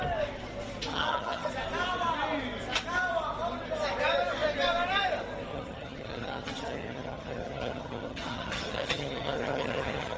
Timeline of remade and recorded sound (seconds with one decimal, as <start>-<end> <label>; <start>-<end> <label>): 0.0-0.9 recorded; 0.9-1.5 remade; 1.5-5.5 recorded; 5.5-10.2 remade